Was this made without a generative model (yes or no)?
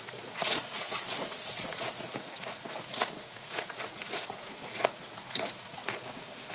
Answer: no